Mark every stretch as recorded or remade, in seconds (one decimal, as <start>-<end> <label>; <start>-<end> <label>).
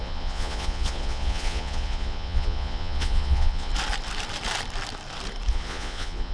0.0-3.7 remade; 3.7-5.5 recorded; 5.5-6.3 remade